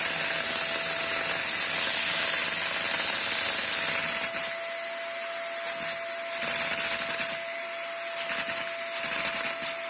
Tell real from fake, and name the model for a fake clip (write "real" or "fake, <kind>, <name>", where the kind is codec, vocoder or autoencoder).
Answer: real